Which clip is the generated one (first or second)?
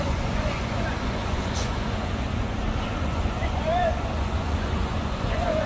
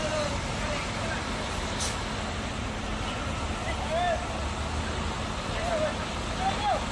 first